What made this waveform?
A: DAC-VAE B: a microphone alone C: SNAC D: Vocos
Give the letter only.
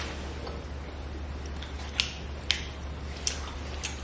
B